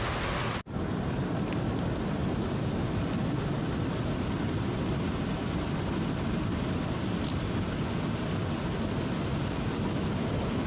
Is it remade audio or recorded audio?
recorded